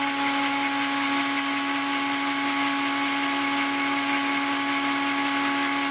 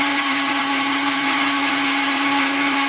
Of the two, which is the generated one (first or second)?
second